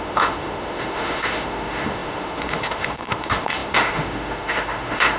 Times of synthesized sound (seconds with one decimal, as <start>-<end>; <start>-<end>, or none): 0.0-5.2